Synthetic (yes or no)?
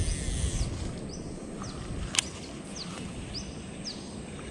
no